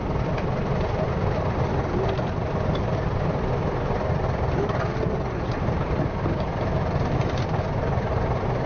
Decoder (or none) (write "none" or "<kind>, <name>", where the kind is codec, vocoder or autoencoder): vocoder, BigVGAN v2